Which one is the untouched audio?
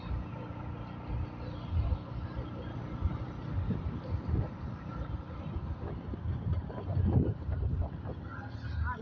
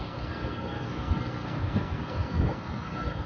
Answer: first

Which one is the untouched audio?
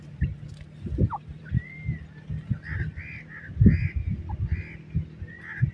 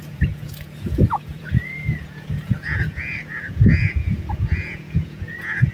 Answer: first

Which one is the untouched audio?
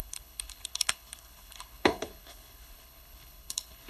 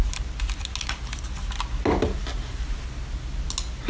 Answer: second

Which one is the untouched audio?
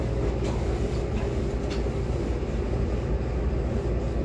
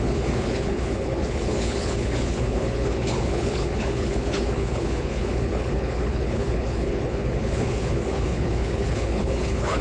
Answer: first